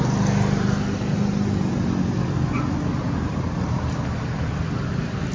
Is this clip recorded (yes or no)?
yes